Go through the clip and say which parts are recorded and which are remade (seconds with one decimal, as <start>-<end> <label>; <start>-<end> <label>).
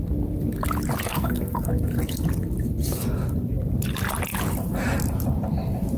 0.0-1.1 recorded; 1.1-1.7 remade; 1.7-6.0 recorded